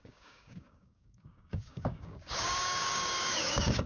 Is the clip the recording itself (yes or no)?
no